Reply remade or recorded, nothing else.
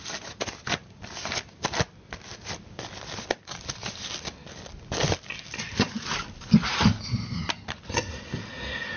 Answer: recorded